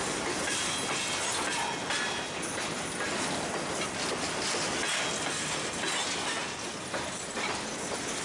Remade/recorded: recorded